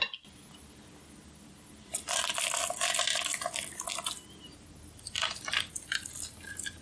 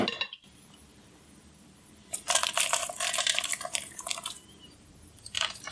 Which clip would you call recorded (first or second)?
first